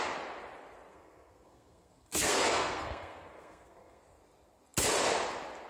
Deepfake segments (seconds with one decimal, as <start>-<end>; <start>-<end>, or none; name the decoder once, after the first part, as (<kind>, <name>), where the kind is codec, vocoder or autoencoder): 0.9-4.0 (codec, SNAC)